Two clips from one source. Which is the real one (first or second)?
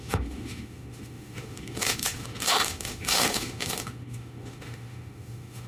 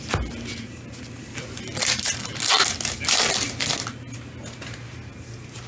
second